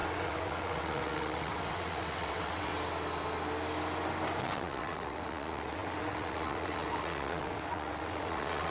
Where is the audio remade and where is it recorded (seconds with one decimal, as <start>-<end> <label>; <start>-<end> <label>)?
0.0-2.7 remade; 2.7-4.4 recorded; 4.4-8.7 remade